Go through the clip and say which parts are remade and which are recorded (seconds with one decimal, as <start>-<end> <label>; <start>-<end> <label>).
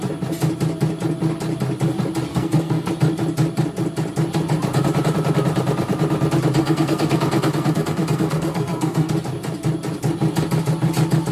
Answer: 0.0-2.3 recorded; 2.3-2.9 remade; 2.9-6.6 recorded; 6.6-9.1 remade; 9.1-11.3 recorded